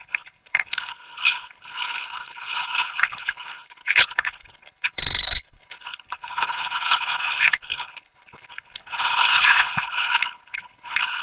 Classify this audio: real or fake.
fake